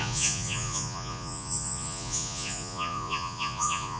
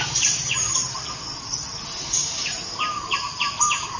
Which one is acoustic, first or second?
second